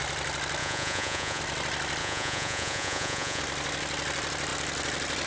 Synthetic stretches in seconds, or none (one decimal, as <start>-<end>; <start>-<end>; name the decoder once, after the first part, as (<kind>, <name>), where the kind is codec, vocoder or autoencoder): 0.6-1.4 (vocoder, Vocos); 2.0-3.4